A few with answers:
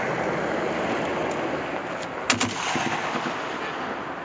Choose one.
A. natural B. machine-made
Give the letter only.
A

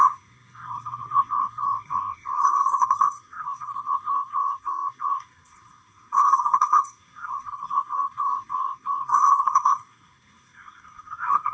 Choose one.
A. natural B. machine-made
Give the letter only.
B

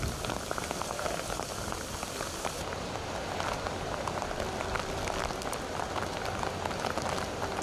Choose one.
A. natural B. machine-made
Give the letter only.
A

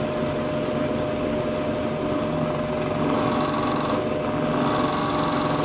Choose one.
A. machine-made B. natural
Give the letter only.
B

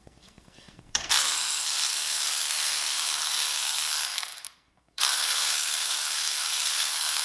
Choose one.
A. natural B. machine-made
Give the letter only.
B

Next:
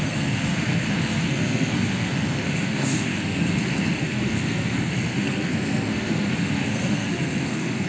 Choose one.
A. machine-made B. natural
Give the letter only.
A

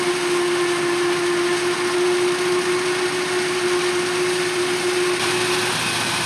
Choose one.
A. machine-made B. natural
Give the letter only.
B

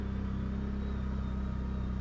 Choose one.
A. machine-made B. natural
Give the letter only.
B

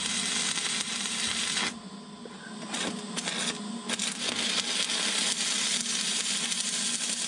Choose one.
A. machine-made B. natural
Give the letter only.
B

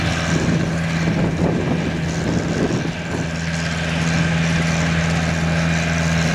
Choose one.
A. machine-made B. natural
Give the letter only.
B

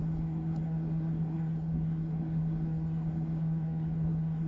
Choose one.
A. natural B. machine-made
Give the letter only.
B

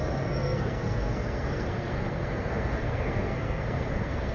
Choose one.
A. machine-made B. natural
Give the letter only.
A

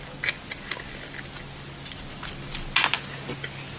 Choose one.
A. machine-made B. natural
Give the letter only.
B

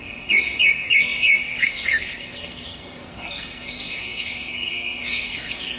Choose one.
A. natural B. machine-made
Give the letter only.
B